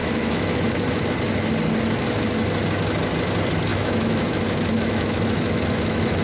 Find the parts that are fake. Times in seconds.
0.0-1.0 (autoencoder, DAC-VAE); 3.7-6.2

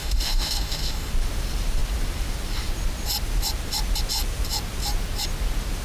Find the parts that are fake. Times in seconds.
0.0-1.1 (autoencoder, DAC-VAE)

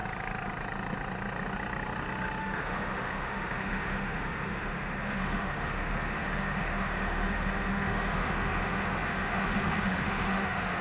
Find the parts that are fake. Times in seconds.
2.4-10.8 (autoencoder, DAC-VAE)

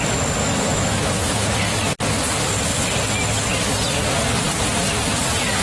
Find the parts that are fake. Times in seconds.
0.4-1.1 (autoencoder, DAC-VAE)